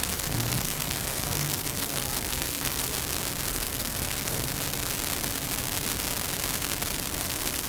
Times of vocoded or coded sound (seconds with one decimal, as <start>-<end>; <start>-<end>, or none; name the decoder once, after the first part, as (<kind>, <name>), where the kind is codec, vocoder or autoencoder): 0.0-2.9 (codec, SNAC); 3.5-4.5; 7.2-7.7